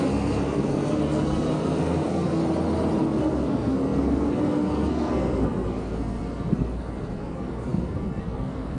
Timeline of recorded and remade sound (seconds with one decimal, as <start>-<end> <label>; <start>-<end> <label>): 0.0-2.4 remade; 2.4-3.0 recorded; 3.0-8.8 remade